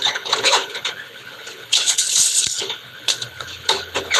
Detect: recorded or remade remade